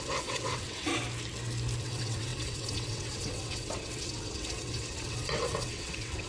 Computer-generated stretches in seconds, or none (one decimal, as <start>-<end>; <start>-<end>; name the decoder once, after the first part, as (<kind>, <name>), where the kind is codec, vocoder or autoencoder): 0.0-0.9 (vocoder, WaveNeXt); 1.8-6.3